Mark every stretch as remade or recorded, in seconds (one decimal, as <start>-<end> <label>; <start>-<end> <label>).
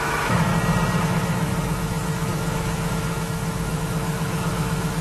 0.0-0.5 remade; 0.5-1.0 recorded; 1.0-5.0 remade